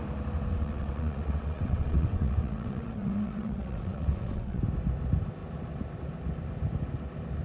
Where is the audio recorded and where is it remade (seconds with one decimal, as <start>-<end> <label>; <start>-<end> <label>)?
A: 0.0-0.5 recorded; 0.5-4.6 remade; 4.6-7.4 recorded